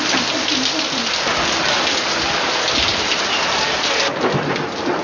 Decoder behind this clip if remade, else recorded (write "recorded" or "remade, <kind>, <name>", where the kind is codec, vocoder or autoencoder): recorded